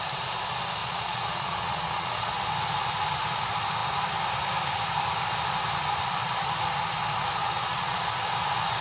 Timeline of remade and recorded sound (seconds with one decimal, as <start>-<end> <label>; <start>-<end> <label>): 0.0-0.8 recorded; 0.8-2.3 remade; 2.3-7.4 recorded; 7.4-8.1 remade; 8.1-8.8 recorded